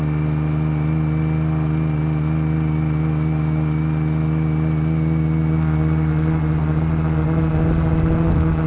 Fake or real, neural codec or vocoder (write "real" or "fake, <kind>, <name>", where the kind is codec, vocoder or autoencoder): real